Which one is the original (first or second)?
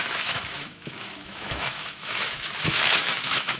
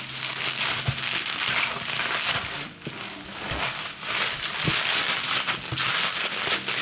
second